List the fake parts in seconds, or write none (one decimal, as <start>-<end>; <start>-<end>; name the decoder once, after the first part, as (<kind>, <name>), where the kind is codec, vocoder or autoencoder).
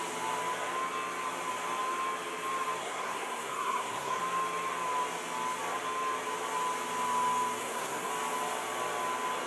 2.8-4.2 (codec, SNAC); 7.6-8.1